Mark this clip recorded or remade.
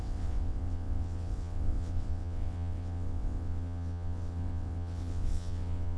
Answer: remade